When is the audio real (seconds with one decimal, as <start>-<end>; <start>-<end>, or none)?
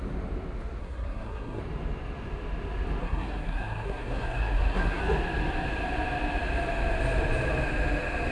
0.0-0.8; 1.6-3.0; 5.0-8.3